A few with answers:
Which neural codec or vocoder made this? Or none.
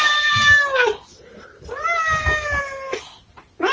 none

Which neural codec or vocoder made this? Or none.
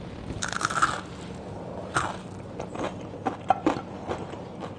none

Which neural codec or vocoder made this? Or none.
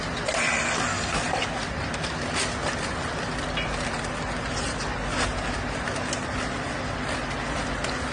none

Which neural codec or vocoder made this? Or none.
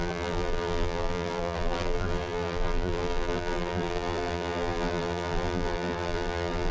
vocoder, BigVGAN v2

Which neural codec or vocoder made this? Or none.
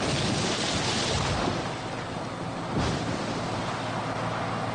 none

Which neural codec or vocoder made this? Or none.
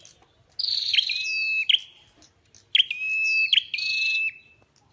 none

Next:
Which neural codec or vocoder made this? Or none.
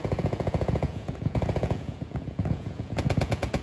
vocoder, Vocos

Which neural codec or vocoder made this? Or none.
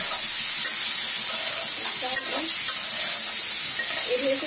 none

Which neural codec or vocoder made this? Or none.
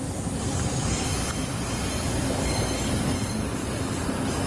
none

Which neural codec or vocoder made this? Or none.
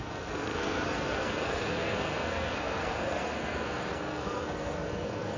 codec, SNAC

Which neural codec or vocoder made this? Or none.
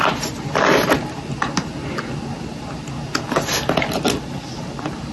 none